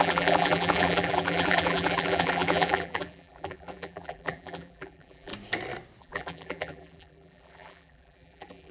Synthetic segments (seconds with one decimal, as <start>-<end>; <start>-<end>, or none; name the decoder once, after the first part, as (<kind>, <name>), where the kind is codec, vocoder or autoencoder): 0.0-5.3 (vocoder, BigVGAN v2); 6.0-8.7